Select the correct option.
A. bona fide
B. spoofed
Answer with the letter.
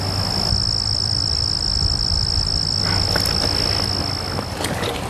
A